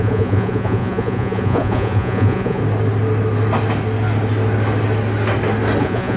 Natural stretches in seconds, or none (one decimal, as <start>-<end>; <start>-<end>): 2.6-5.8